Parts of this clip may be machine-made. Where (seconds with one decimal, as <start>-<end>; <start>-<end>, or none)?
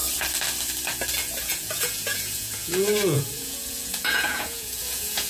1.2-5.3